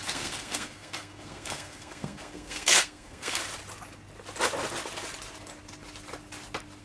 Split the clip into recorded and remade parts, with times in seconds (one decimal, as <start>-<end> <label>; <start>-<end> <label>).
0.0-3.4 remade; 3.4-6.8 recorded